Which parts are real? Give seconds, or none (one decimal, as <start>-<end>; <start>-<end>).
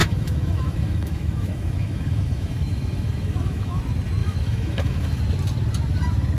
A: 3.8-4.2; 5.2-6.4